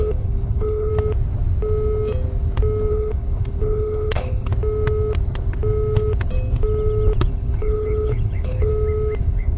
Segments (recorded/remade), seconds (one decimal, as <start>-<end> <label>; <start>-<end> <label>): 0.0-0.9 remade; 0.9-2.9 recorded; 2.9-4.5 remade; 4.5-7.3 recorded; 7.3-8.7 remade; 8.7-9.2 recorded; 9.2-9.6 remade